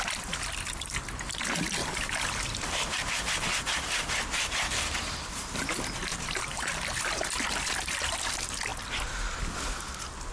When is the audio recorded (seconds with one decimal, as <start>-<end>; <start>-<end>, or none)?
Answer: 0.0-1.8; 5.5-6.1; 7.3-10.3